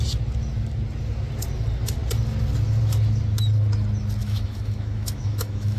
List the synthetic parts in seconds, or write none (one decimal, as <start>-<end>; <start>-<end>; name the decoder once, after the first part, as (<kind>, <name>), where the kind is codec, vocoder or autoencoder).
4.2-5.8 (autoencoder, DAC-VAE)